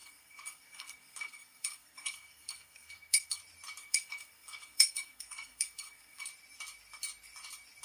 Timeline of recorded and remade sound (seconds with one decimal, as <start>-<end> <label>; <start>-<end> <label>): 0.0-3.4 remade; 3.4-3.8 recorded; 3.8-6.3 remade; 6.3-7.8 recorded